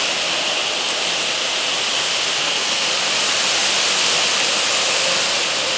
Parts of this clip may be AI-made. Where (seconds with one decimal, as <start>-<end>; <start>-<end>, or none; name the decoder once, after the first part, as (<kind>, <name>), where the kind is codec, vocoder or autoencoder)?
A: 2.3-2.9 (codec, SNAC)